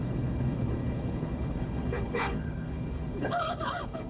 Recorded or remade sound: remade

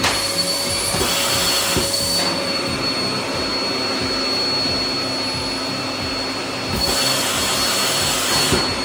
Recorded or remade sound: recorded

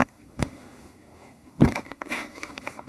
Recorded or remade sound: remade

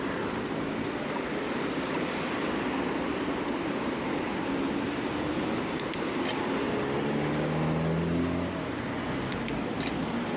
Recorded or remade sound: recorded